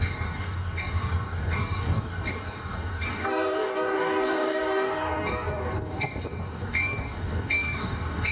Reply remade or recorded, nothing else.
remade